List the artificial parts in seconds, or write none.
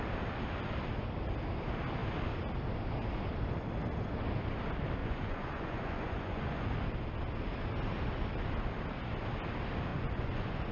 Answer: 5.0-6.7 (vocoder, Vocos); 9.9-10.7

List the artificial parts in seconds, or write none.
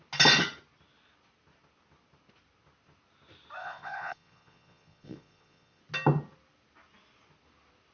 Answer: 3.6-5.8 (vocoder, Vocos)